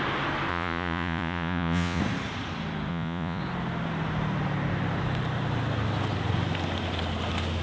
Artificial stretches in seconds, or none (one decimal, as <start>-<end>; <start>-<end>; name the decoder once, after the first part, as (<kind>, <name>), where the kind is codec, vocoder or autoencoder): 0.5-2.0 (vocoder, Vocos); 2.9-3.4